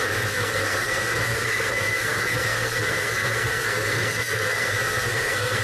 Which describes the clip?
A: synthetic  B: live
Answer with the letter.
A